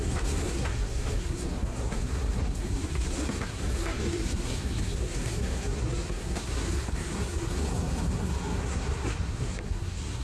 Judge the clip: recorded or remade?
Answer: remade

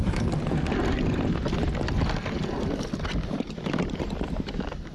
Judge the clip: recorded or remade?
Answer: recorded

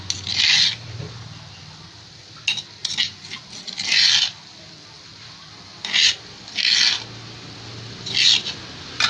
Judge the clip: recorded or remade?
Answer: recorded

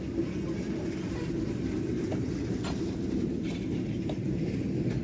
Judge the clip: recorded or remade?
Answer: recorded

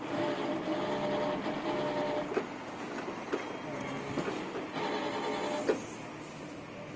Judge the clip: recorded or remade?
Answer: recorded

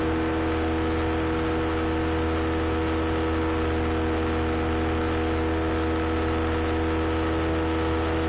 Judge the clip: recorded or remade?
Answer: recorded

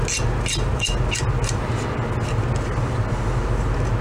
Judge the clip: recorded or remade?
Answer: recorded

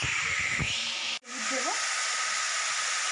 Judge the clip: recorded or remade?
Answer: recorded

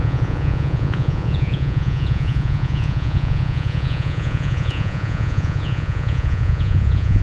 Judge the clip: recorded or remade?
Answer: remade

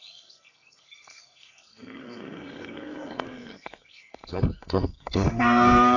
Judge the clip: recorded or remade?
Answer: remade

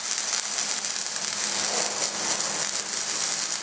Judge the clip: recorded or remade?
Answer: recorded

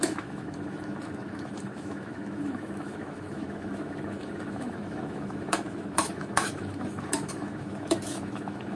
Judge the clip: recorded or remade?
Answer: remade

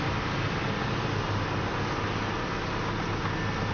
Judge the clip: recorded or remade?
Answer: recorded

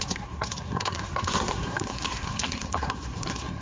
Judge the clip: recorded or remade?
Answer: remade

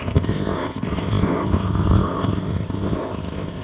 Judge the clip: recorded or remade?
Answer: remade